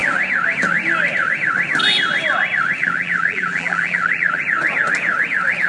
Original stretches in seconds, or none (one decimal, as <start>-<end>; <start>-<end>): 0.0-2.8; 4.4-5.7